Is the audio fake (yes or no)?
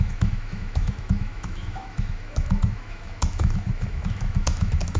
yes